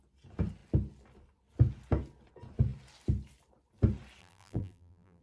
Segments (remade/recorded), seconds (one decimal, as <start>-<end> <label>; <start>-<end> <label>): 0.0-4.2 recorded; 4.2-5.2 remade